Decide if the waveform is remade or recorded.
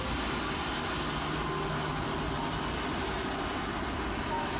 recorded